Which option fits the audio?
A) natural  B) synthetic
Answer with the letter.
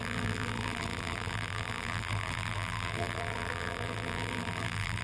B